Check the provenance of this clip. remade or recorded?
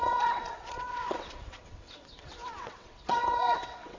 remade